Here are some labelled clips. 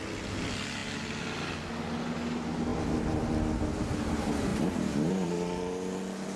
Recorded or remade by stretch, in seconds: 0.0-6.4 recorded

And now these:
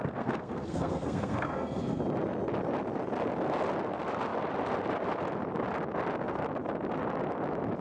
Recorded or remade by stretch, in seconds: 0.0-2.0 remade; 2.0-7.8 recorded

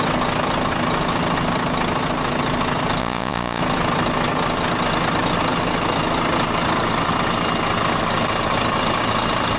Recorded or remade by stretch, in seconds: 0.0-3.0 recorded; 3.0-3.6 remade; 3.6-9.6 recorded

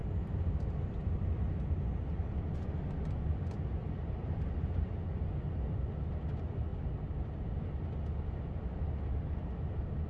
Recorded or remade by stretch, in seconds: 0.0-0.5 remade; 0.5-3.8 recorded; 3.8-4.9 remade; 4.9-10.1 recorded